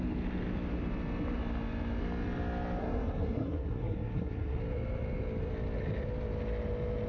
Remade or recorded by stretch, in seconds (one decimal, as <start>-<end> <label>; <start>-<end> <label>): 0.0-2.8 recorded; 2.8-4.6 remade; 4.6-7.1 recorded